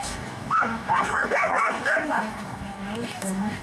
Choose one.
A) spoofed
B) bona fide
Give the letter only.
A